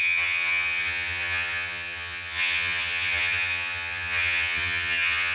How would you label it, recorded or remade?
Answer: remade